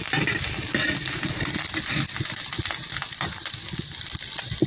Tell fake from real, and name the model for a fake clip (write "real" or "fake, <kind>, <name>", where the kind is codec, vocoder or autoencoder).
real